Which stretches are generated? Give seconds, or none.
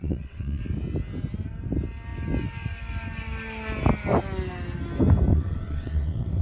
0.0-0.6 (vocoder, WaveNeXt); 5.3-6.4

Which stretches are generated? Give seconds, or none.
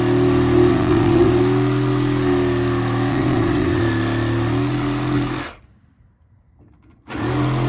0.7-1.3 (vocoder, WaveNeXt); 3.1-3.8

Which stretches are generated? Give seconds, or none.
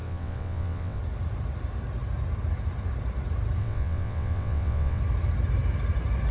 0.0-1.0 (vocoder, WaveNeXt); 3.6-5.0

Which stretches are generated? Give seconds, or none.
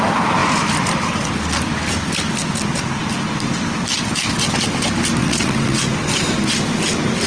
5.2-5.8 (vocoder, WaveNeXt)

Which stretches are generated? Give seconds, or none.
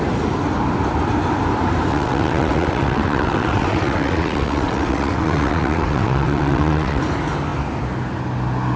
1.9-7.0 (vocoder, WaveNeXt)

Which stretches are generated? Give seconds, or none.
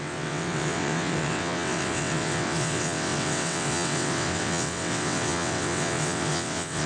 0.0-6.9 (vocoder, WaveNeXt)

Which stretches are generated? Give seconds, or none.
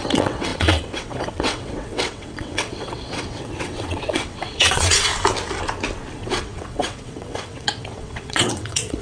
0.0-5.1 (vocoder, WaveNeXt); 6.1-9.0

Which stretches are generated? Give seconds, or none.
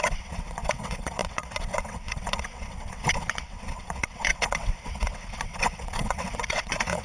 0.0-7.0 (vocoder, WaveNeXt)